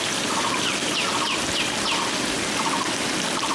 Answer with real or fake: real